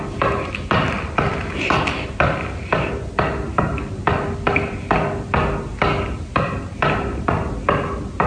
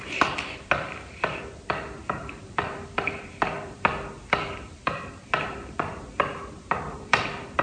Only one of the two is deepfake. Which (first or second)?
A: second